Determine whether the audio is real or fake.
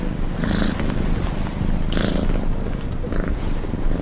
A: real